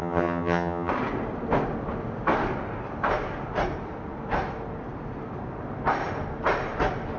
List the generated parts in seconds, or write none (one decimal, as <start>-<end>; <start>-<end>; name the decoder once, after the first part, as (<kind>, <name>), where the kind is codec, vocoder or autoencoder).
0.0-0.9 (vocoder, HiFi-GAN)